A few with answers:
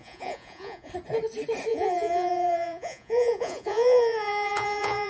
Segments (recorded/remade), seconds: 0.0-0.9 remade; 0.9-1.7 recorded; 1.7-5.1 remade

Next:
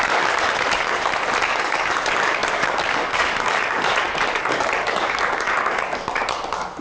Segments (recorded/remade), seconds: 0.0-1.1 remade; 1.1-1.6 recorded; 1.6-6.8 remade

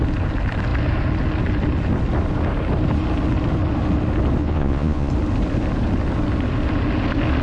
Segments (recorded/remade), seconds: 0.0-4.4 recorded; 4.4-5.1 remade; 5.1-7.4 recorded

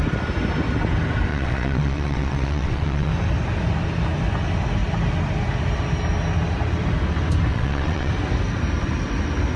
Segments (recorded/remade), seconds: 0.0-1.3 recorded; 1.3-3.1 remade; 3.1-7.5 recorded; 7.5-8.1 remade; 8.1-9.6 recorded

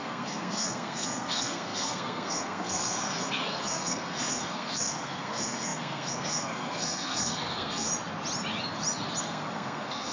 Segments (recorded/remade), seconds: 0.0-7.9 remade; 7.9-9.2 recorded; 9.2-10.1 remade

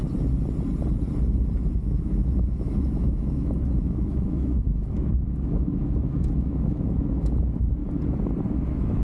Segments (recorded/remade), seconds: 0.0-1.8 recorded; 1.8-7.8 remade; 7.8-8.5 recorded; 8.5-9.0 remade

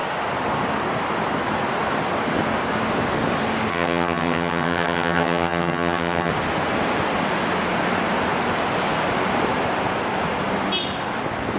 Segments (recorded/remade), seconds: 0.0-3.7 recorded; 3.7-6.3 remade; 6.3-11.6 recorded